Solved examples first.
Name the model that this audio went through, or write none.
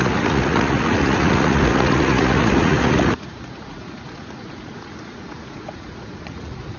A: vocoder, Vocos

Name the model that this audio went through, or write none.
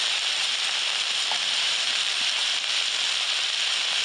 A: vocoder, BigVGAN v2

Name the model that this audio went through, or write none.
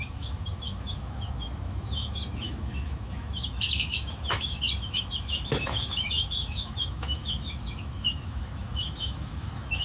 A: autoencoder, DAC-VAE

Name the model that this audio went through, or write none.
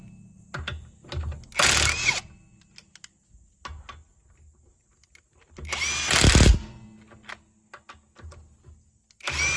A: none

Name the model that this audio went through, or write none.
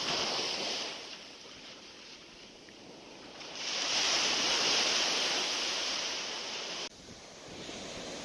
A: vocoder, BigVGAN v2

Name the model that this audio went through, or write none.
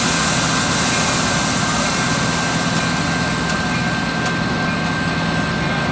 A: none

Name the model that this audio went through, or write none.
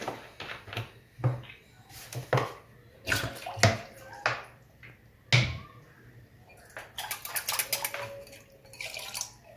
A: none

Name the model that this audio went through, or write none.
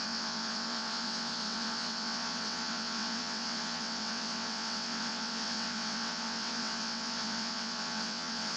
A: vocoder, WaveNeXt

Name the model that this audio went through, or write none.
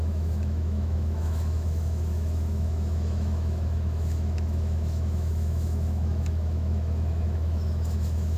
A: autoencoder, DAC-VAE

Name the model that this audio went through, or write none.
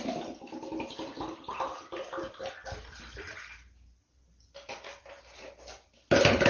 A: none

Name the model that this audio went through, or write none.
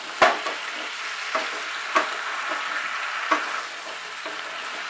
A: none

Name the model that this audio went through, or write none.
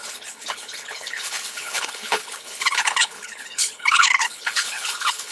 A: codec, HILCodec